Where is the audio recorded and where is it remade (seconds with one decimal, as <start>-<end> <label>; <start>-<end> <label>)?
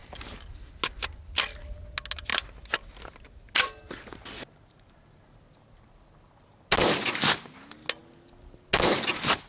0.0-9.5 recorded